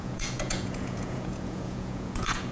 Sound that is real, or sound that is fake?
fake